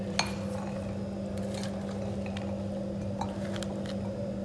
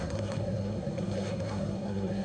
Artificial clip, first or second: second